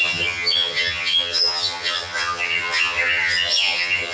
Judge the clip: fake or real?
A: fake